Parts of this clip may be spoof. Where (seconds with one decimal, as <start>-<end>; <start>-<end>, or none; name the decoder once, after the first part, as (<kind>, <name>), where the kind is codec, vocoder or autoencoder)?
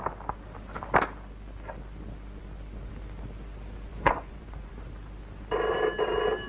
3.9-4.7 (vocoder, Vocos)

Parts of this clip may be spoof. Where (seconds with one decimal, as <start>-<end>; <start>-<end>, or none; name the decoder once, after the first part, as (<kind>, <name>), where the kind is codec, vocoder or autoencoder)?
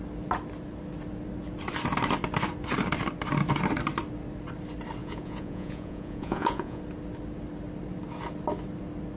5.0-6.8 (vocoder, Vocos)